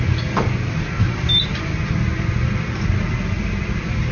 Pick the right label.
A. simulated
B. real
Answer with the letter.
B